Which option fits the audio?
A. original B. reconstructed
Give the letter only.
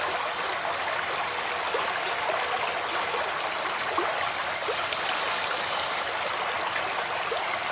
A